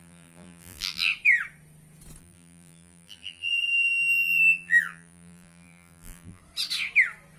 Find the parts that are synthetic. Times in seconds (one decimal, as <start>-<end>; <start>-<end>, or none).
0.0-1.1; 2.2-6.4